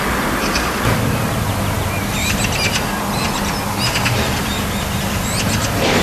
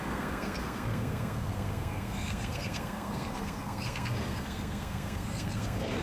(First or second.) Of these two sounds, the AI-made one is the second